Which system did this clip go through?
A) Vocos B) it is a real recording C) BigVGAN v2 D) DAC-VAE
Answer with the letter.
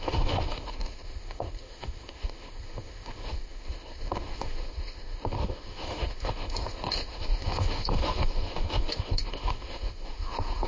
D